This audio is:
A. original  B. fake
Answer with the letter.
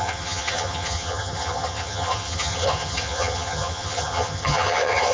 B